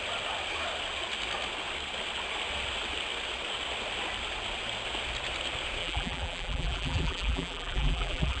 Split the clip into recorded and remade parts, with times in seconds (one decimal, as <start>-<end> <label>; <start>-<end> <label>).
0.0-5.8 recorded; 5.8-8.4 remade